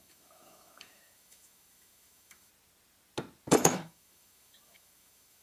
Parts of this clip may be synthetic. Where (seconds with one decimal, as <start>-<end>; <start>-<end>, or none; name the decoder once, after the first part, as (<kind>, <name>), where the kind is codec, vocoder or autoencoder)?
0.0-2.5 (autoencoder, DAC-VAE); 3.5-5.4